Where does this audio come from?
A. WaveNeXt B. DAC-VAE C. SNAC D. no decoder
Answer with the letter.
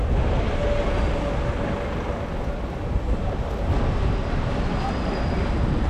D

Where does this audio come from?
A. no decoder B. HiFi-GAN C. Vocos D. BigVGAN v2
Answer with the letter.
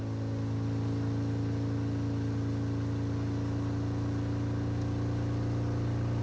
A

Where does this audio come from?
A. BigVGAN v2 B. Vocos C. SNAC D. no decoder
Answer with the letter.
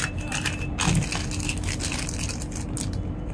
D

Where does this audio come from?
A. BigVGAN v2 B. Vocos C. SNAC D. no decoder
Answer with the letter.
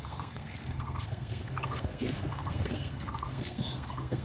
C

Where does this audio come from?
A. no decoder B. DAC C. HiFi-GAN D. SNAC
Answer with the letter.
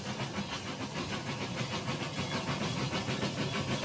A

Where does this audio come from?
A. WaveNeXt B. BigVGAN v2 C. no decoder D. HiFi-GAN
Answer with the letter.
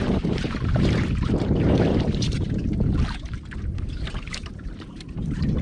B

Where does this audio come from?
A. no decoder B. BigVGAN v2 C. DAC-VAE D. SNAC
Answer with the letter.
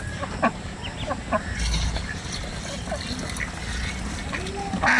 A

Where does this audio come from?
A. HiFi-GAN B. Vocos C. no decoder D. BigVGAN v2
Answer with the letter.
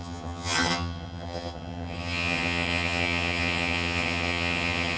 A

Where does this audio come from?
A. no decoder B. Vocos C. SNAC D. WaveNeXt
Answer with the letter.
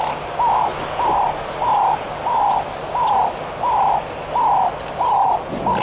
A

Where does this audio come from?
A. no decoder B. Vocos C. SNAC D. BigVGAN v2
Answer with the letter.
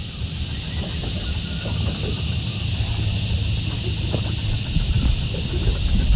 A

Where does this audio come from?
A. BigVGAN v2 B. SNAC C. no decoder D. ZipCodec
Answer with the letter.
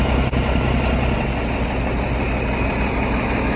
C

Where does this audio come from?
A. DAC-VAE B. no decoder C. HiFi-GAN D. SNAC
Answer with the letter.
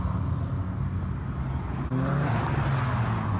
B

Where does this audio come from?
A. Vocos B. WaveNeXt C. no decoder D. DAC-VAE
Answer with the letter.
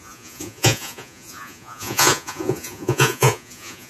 A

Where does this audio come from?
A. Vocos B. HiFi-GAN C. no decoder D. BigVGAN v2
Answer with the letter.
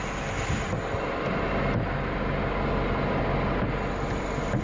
C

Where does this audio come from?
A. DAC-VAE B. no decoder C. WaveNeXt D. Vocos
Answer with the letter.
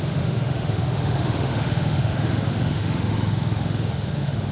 A